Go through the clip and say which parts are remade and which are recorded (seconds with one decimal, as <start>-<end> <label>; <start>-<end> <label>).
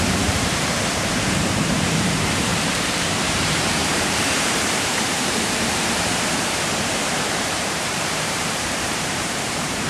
0.0-9.9 remade